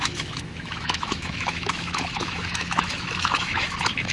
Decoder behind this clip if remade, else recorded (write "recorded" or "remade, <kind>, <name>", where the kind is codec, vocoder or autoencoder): remade, autoencoder, DAC-VAE